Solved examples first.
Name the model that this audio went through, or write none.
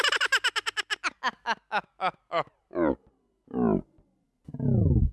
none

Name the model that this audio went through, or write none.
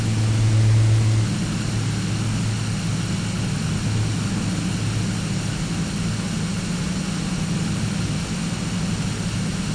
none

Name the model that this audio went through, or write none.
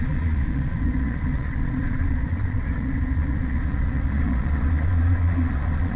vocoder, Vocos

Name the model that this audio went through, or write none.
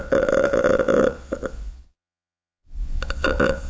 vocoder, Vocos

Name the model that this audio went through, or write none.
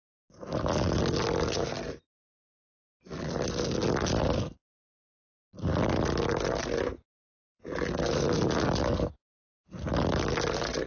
none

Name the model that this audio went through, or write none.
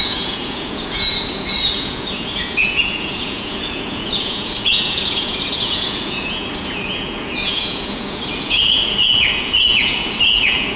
vocoder, Vocos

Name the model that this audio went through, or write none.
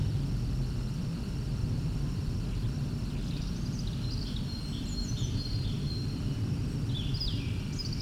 none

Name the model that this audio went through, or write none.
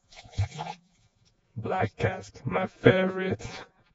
vocoder, Vocos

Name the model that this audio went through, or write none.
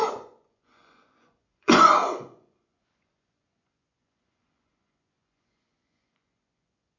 vocoder, Vocos